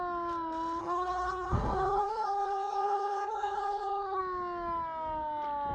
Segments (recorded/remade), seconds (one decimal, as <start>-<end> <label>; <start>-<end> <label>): 0.0-0.8 recorded; 0.8-4.2 remade; 4.2-5.7 recorded